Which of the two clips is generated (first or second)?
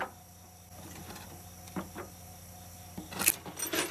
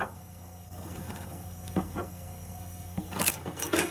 second